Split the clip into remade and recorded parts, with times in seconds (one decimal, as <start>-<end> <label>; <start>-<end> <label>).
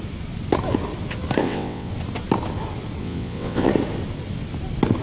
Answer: 0.0-1.4 recorded; 1.4-1.9 remade; 1.9-3.0 recorded; 3.0-3.7 remade; 3.7-5.0 recorded